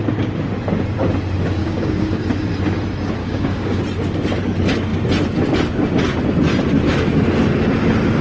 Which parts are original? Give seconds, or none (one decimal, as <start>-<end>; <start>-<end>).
0.0-1.6; 2.2-3.2; 3.8-8.2